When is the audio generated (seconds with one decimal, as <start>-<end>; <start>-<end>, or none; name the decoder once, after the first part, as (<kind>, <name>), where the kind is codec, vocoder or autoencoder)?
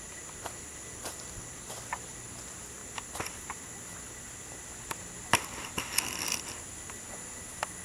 none